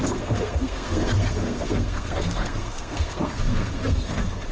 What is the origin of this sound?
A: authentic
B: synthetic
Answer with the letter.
B